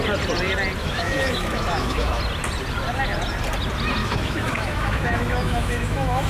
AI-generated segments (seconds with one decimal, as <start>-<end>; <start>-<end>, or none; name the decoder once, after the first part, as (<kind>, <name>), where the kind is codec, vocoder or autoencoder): 0.8-2.2 (autoencoder, DAC-VAE); 4.0-6.3